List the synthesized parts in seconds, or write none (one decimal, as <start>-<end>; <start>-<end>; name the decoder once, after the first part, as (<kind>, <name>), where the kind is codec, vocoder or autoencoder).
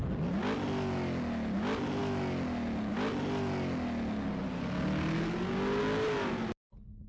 none